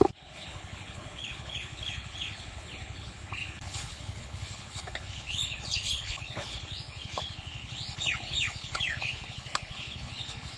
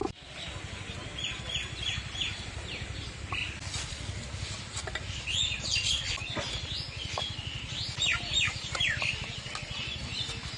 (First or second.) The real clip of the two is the second